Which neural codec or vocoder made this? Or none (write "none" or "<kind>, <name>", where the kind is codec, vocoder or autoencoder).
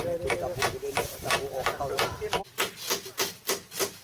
none